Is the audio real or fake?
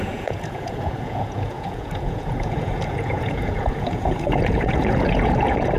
fake